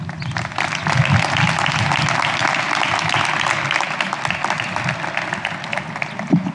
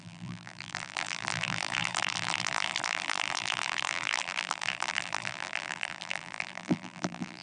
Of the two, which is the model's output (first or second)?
second